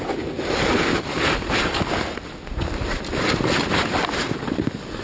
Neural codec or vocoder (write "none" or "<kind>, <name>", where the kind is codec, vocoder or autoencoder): none